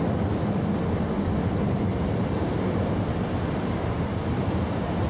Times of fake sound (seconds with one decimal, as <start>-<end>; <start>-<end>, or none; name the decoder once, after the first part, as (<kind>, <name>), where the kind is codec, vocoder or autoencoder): 1.9-5.1 (vocoder, BigVGAN v2)